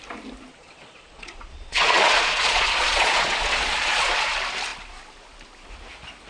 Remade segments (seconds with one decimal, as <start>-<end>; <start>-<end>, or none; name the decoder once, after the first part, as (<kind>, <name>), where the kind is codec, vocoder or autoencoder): 0.5-4.3 (vocoder, Vocos)